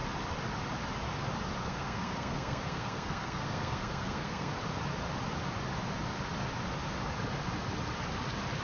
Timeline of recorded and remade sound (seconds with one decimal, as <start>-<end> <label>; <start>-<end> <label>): 0.0-1.6 recorded; 1.6-4.5 remade; 4.5-8.6 recorded